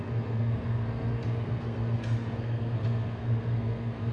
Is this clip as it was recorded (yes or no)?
no